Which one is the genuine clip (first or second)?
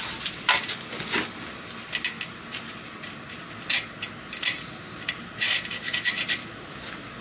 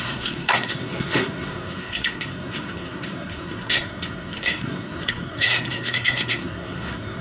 first